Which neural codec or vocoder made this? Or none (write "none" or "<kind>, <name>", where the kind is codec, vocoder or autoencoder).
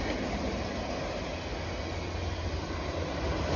none